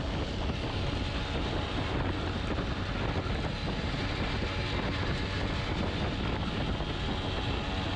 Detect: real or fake real